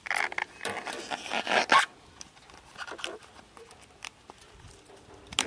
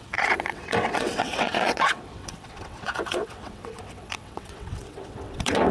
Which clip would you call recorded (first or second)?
first